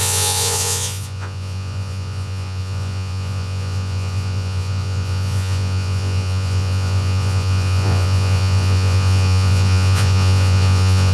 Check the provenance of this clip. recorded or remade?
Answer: remade